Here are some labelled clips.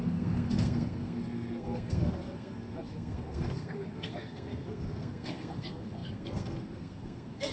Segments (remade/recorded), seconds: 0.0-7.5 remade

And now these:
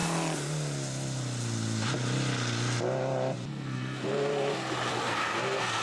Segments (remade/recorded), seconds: 0.0-3.5 recorded; 3.5-4.3 remade; 4.3-4.9 recorded; 4.9-5.8 remade

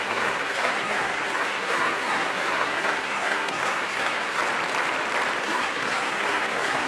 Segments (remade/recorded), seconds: 0.0-4.4 remade; 4.4-5.4 recorded; 5.4-6.9 remade

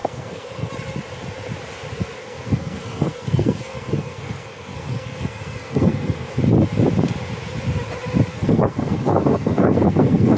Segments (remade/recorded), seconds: 0.0-0.7 remade; 0.7-2.2 recorded; 2.2-6.4 remade; 6.4-8.3 recorded; 8.3-10.4 remade

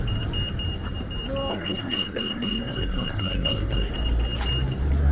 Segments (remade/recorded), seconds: 0.0-1.5 recorded; 1.5-3.9 remade; 3.9-5.1 recorded

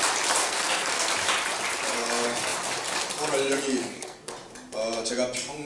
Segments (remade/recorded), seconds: 0.0-0.4 recorded; 0.4-1.1 remade; 1.1-3.8 recorded; 3.8-4.3 remade; 4.3-5.6 recorded